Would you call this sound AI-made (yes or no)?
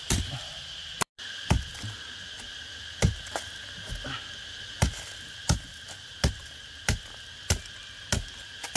no